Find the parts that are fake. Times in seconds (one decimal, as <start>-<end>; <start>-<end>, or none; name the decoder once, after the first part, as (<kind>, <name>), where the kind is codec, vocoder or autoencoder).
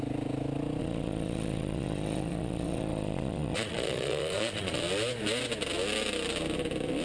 0.8-4.8 (vocoder, Vocos)